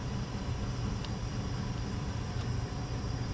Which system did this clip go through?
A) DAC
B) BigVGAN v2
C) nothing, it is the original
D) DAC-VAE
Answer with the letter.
B